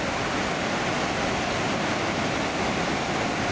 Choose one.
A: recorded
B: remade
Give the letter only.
A